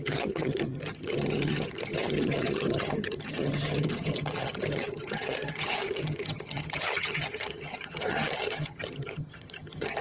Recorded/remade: remade